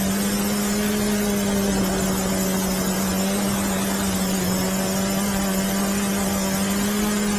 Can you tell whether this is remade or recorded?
recorded